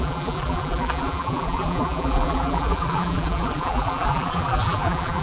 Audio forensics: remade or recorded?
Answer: remade